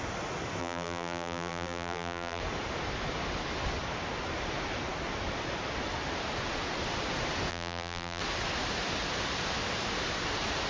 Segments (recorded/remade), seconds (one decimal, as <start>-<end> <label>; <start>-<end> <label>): 0.0-0.6 recorded; 0.6-2.4 remade; 2.4-7.5 recorded; 7.5-8.2 remade; 8.2-10.7 recorded